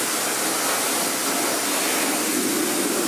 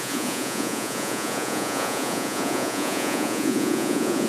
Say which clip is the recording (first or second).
first